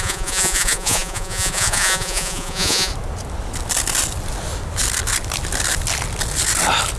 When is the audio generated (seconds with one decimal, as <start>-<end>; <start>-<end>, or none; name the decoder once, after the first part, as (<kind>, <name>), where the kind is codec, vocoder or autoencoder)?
0.0-2.9 (vocoder, Vocos)